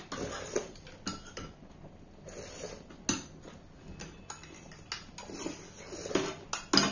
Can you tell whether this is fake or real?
real